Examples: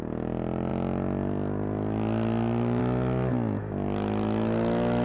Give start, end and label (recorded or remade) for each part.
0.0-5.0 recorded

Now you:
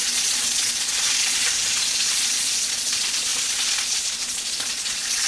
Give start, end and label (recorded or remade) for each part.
0.0-5.3 remade

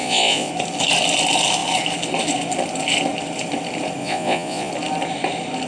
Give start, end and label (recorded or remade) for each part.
0.0-0.5 remade; 0.5-4.0 recorded; 4.0-4.7 remade; 4.7-5.7 recorded

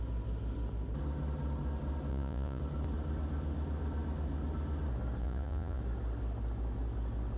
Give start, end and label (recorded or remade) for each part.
0.0-2.1 recorded; 2.1-2.6 remade; 2.6-5.2 recorded; 5.2-5.8 remade; 5.8-7.4 recorded

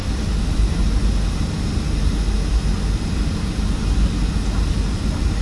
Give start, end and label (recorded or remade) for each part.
0.0-5.4 recorded

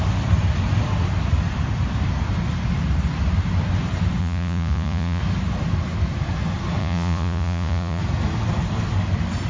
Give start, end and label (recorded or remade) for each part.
0.0-4.2 recorded; 4.2-5.2 remade; 5.2-6.8 recorded; 6.8-8.0 remade; 8.0-9.5 recorded

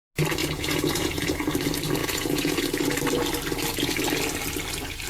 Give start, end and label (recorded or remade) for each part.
0.0-0.4 recorded; 0.4-1.5 remade; 1.5-2.0 recorded; 2.0-2.6 remade; 2.6-5.1 recorded